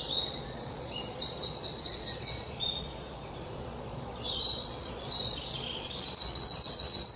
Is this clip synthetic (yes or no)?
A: yes